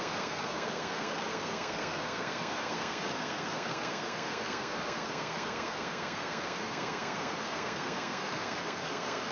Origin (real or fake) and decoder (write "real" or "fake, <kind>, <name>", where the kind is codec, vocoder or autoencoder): fake, codec, SNAC